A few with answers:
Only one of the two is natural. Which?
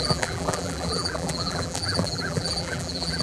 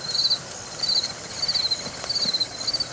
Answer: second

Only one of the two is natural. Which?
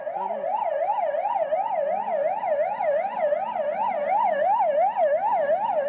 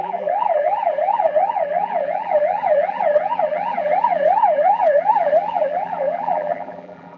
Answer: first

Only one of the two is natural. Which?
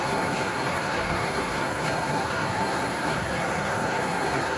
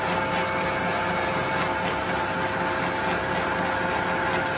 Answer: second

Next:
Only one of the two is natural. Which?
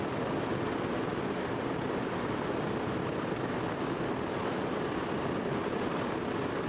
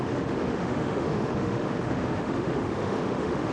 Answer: first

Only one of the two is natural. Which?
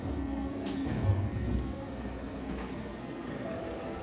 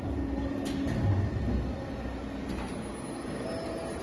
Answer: second